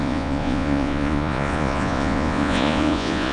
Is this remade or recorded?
remade